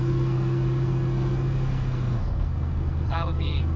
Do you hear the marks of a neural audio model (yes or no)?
yes